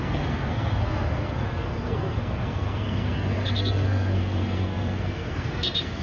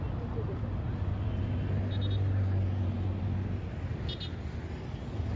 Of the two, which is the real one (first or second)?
second